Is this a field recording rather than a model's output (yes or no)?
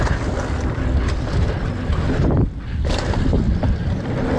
no